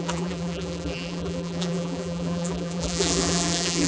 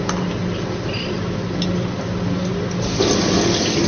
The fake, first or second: first